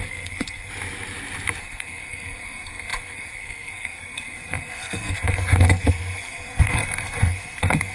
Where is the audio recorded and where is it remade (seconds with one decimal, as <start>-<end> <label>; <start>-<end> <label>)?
0.0-0.7 remade; 0.7-1.6 recorded; 1.6-7.9 remade